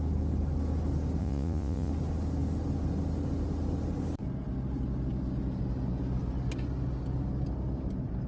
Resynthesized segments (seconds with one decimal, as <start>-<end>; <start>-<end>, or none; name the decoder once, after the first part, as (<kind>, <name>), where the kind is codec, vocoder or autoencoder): 1.2-1.9 (vocoder, Vocos)